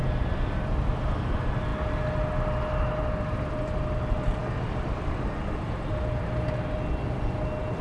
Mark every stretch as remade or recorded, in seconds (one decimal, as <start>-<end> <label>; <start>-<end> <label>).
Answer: 0.0-7.8 recorded